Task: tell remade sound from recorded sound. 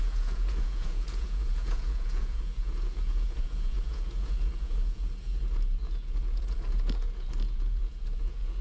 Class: remade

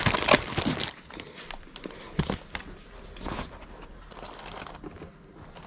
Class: recorded